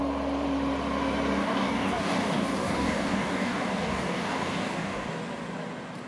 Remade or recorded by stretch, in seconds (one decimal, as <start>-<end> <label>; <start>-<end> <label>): 0.0-1.4 recorded; 1.4-5.1 remade; 5.1-6.1 recorded